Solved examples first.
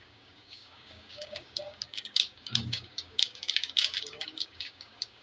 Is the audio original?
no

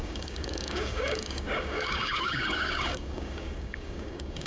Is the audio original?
no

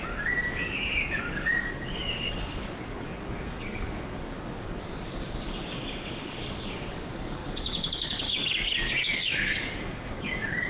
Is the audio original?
no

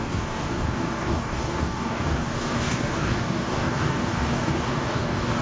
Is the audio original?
no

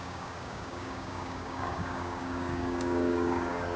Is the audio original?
no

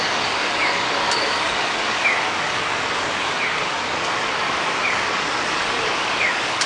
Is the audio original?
no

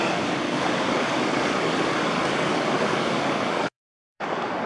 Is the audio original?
no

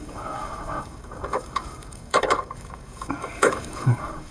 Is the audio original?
no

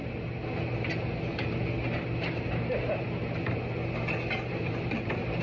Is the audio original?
yes